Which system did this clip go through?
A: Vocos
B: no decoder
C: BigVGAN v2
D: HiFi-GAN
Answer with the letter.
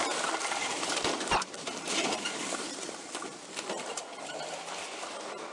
B